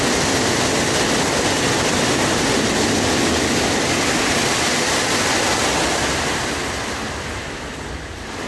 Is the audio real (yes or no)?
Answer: yes